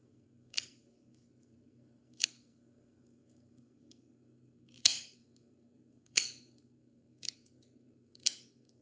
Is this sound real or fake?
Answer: fake